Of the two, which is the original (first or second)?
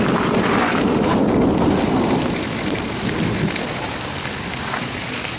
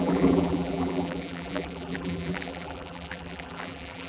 first